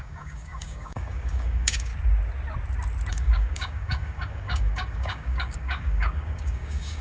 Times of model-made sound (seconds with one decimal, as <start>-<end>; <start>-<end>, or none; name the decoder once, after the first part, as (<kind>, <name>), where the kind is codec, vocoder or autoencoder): 0.0-1.9 (codec, DAC); 3.1-7.0